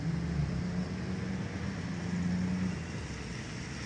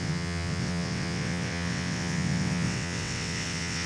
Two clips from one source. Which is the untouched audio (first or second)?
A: first